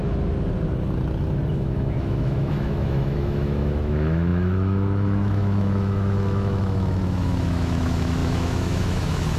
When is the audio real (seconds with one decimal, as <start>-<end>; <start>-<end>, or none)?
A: 0.0-1.5